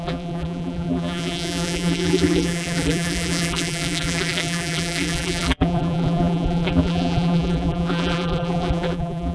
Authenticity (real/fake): fake